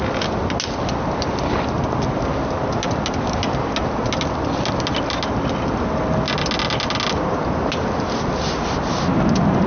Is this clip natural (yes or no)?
yes